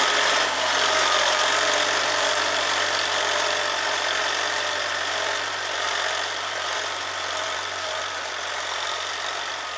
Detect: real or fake fake